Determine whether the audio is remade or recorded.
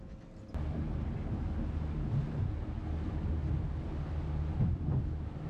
recorded